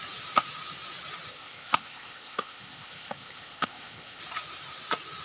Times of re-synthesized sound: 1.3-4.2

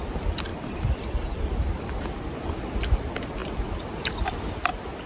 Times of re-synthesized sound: none

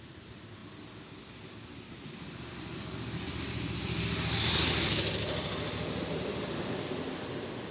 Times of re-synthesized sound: none

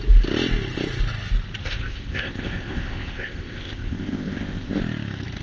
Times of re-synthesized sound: 1.6-4.8

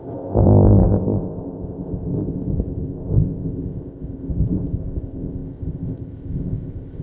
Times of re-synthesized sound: 0.0-7.0

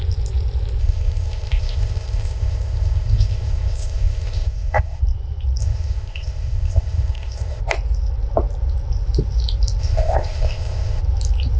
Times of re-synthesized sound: 0.8-5.0; 5.6-7.6; 9.8-11.0

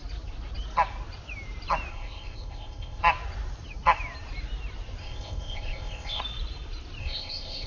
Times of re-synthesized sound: 1.9-3.0; 5.0-6.2; 7.0-7.7

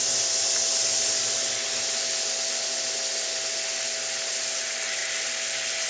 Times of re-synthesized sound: none